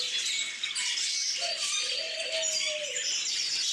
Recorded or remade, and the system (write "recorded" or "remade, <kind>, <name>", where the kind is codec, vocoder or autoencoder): recorded